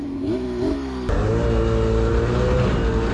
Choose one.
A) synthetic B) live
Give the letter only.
B